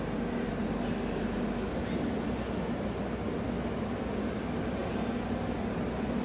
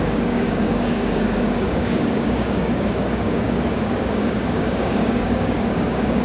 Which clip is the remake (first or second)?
second